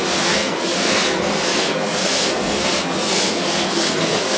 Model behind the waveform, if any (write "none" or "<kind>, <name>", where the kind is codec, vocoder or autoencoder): codec, SNAC